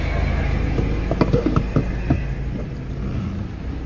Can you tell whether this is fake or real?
real